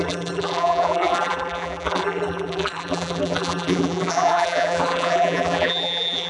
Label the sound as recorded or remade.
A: remade